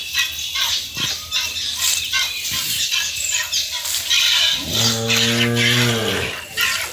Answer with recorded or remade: recorded